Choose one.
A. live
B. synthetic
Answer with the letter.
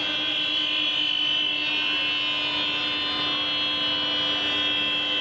A